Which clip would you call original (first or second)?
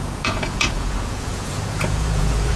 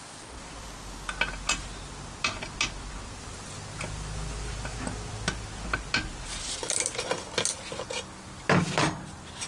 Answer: second